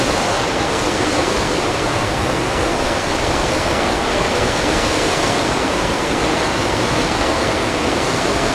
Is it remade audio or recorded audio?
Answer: remade